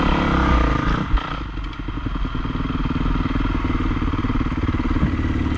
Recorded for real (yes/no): yes